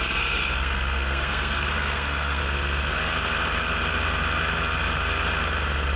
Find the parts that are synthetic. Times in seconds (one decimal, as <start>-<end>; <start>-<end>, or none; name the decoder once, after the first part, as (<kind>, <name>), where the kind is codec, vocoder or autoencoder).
0.0-2.4 (codec, SNAC)